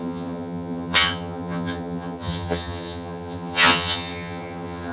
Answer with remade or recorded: remade